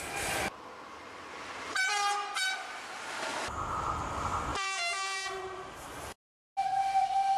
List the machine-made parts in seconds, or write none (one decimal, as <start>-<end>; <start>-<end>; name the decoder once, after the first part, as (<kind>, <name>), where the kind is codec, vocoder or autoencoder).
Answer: 4.5-5.9 (vocoder, BigVGAN v2)